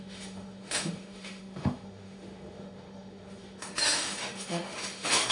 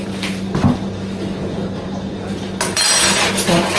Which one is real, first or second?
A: second